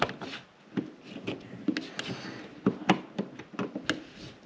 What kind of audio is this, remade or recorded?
recorded